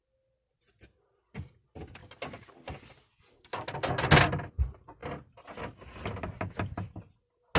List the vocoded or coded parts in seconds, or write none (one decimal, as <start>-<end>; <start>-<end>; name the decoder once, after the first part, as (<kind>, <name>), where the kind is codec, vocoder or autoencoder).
none